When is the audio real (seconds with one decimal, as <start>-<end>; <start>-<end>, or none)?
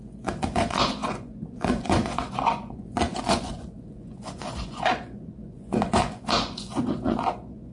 none